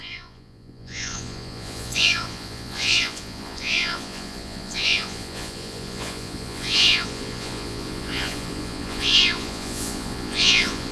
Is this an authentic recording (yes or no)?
no